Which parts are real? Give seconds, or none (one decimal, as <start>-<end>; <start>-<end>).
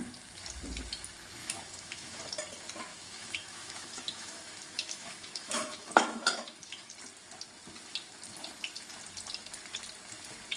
0.0-1.4; 2.2-2.9; 6.9-10.6